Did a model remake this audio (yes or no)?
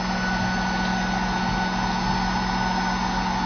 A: no